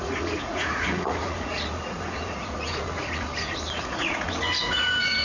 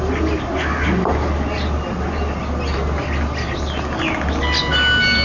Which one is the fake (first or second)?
first